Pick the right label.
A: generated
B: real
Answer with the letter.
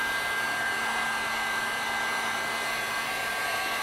B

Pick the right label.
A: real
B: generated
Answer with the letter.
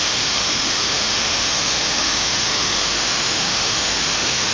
B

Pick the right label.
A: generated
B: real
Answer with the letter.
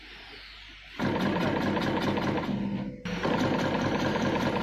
B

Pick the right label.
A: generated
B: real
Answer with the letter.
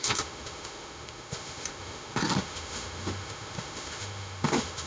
A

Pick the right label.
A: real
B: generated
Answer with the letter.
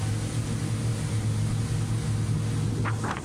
A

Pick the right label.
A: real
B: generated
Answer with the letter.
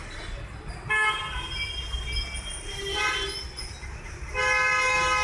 A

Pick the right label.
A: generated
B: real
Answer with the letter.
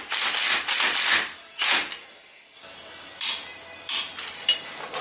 B